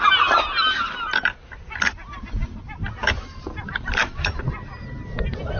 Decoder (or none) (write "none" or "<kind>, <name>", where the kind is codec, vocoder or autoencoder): none